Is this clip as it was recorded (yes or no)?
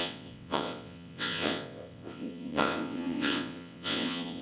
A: no